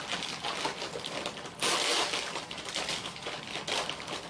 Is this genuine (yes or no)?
yes